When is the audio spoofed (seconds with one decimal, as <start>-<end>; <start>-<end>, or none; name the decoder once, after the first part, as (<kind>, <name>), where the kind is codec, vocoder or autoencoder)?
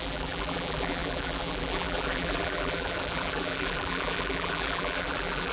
0.0-5.5 (vocoder, BigVGAN v2)